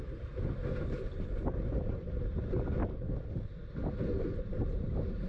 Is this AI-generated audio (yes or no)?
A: no